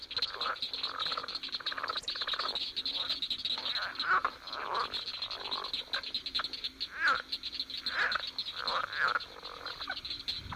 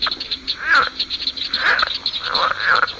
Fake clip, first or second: second